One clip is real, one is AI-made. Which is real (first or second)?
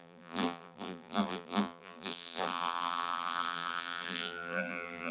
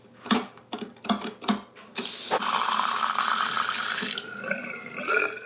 second